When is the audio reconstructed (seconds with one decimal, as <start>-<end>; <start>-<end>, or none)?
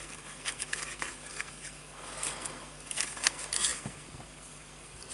0.0-5.1